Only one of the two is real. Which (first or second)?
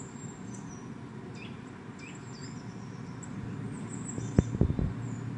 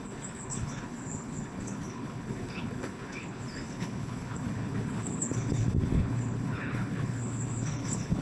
first